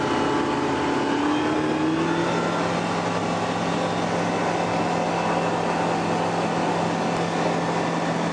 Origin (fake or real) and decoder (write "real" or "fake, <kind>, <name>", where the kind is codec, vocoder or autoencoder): real